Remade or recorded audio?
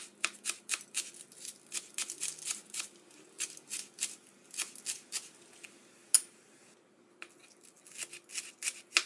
recorded